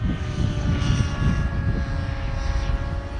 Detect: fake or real real